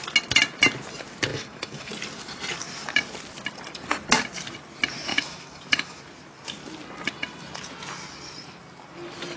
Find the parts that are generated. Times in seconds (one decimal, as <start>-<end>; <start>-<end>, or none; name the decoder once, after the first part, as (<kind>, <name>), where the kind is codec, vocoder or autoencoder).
1.3-1.9 (autoencoder, DAC-VAE); 5.1-6.0